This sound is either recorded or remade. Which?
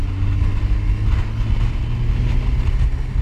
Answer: recorded